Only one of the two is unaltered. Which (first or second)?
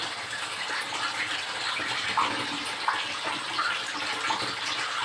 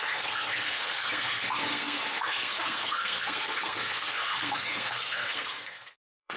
first